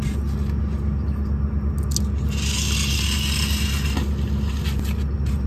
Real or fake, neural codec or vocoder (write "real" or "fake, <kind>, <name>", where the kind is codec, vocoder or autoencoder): real